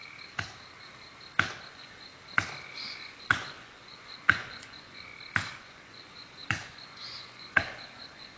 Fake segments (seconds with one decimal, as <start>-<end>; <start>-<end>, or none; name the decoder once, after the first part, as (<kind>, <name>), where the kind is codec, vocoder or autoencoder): 1.7-2.1 (vocoder, Vocos); 2.7-5.1; 5.6-8.4